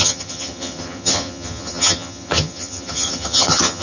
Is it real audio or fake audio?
fake